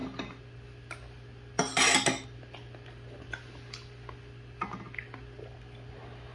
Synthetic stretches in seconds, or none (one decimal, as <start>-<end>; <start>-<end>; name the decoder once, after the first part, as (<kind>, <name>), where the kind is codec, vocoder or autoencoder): none